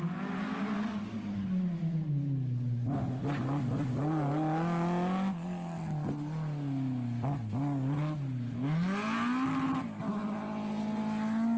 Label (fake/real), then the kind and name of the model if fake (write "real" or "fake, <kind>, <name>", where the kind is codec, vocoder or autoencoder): real